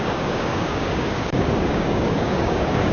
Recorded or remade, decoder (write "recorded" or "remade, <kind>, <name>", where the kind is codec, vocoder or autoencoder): remade, codec, DAC